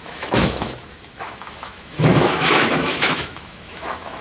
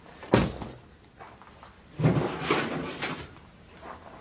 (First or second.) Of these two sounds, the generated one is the first